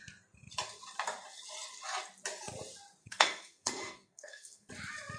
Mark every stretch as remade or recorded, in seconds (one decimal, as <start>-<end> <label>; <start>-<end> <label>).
0.0-3.0 recorded; 3.0-4.7 remade; 4.7-5.2 recorded